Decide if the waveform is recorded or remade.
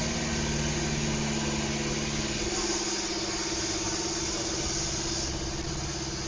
recorded